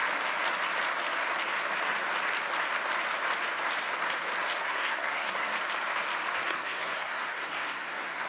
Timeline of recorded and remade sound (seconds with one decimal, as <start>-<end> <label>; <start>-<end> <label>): 0.0-4.6 recorded; 4.6-5.5 remade; 5.5-6.4 recorded; 6.4-8.3 remade